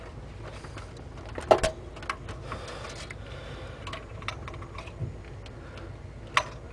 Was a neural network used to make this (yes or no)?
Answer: no